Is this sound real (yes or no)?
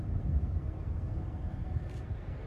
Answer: no